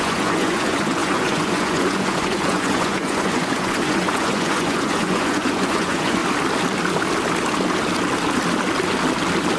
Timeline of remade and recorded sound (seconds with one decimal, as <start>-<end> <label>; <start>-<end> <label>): 0.0-6.2 remade; 6.2-9.6 recorded